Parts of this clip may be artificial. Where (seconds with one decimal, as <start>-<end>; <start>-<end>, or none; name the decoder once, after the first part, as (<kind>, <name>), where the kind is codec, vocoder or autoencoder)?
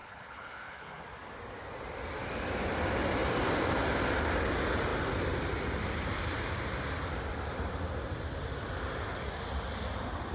0.0-1.0 (codec, HILCodec)